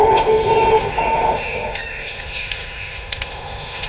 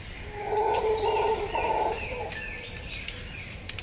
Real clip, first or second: second